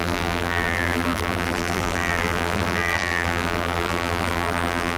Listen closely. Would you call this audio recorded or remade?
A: remade